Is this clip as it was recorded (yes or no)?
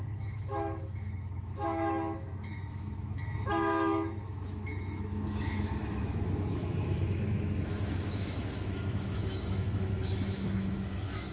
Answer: no